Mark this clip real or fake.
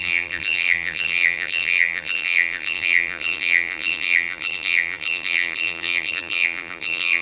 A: fake